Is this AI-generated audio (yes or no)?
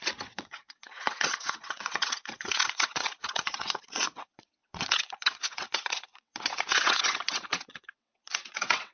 yes